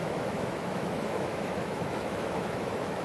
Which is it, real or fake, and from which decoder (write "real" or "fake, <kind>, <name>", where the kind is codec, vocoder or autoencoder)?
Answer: fake, autoencoder, DAC-VAE